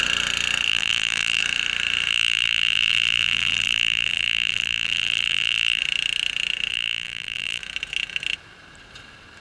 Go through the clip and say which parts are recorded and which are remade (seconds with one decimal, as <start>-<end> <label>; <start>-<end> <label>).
0.0-0.7 recorded; 0.7-1.4 remade; 1.4-2.1 recorded; 2.1-5.8 remade; 5.8-6.7 recorded; 6.7-7.6 remade; 7.6-9.4 recorded